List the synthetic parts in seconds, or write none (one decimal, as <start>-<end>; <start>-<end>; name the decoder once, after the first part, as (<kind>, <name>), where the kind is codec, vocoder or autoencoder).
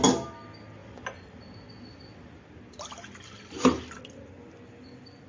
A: none